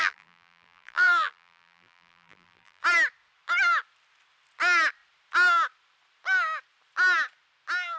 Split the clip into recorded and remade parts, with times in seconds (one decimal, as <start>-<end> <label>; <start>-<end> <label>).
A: 0.0-2.8 remade; 2.8-8.0 recorded